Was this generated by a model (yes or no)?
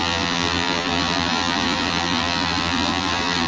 yes